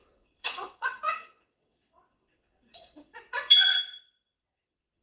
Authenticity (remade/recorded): remade